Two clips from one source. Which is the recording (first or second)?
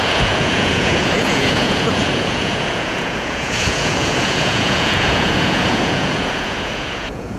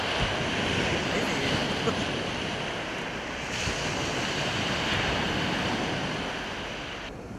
second